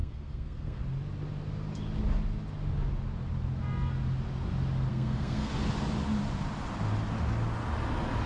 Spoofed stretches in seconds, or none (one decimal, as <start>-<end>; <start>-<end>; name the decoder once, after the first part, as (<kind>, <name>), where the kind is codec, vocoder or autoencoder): 0.0-0.8 (codec, SNAC); 4.9-5.5